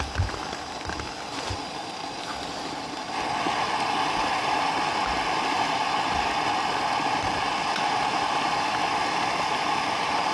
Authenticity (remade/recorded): recorded